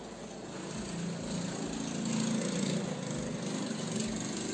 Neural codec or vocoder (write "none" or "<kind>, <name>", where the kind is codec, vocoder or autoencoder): none